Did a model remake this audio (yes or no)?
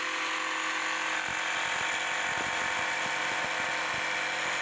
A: no